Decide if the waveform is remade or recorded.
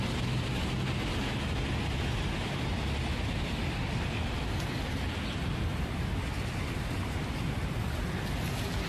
recorded